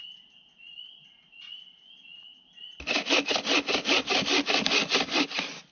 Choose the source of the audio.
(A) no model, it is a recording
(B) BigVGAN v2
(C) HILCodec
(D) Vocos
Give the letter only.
A